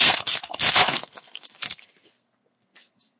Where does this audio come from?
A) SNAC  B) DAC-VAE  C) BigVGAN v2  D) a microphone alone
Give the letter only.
A